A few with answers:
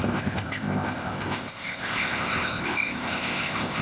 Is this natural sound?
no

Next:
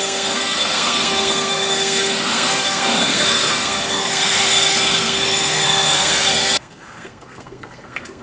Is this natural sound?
no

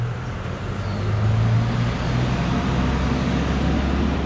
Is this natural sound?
yes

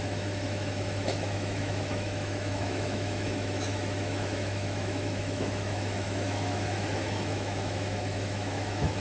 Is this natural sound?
no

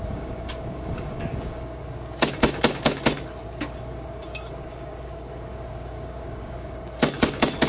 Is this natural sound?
no